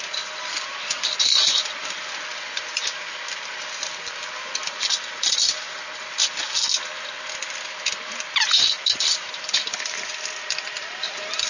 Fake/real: real